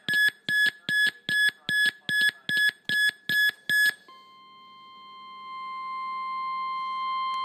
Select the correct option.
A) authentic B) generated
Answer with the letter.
A